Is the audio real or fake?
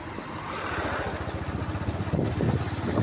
real